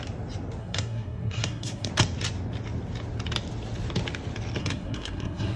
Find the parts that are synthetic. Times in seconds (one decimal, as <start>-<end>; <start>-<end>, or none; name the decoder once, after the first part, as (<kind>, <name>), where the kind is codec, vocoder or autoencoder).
0.6-1.9 (codec, SNAC); 4.6-5.6